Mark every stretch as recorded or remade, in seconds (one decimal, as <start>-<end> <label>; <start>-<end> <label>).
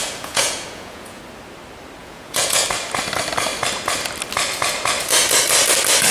0.0-1.2 remade; 1.2-2.0 recorded; 2.0-2.6 remade; 2.6-6.1 recorded